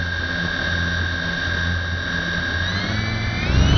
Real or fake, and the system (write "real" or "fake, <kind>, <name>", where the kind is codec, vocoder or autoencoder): real